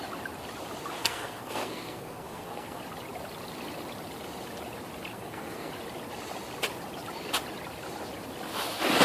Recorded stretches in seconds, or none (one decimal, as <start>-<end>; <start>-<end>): 0.0-1.0; 2.8-5.1; 5.7-9.0